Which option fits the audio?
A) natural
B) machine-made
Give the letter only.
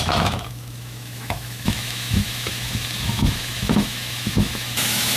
B